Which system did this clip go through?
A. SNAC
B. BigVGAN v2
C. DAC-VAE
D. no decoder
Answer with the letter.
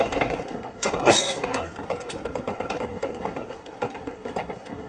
A